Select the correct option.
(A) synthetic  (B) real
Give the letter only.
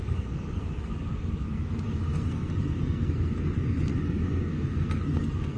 A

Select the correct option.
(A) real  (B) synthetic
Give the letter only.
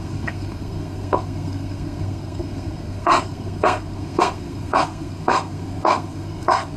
B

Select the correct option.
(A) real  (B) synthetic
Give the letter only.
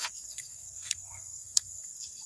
B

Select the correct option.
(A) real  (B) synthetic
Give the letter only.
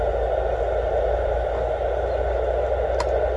A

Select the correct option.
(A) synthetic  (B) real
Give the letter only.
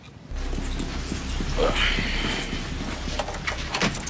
B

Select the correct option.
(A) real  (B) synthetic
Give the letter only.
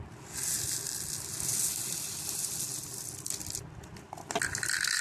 A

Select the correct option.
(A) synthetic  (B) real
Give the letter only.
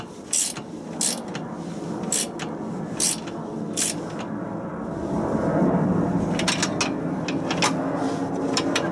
B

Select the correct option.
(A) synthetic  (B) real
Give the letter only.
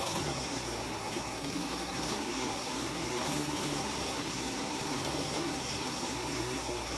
A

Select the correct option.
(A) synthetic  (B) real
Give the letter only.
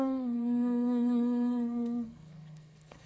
A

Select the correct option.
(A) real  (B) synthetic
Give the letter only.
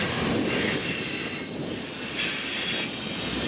A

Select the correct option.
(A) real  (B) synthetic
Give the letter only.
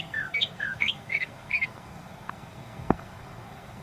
B